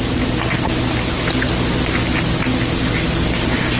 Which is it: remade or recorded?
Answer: recorded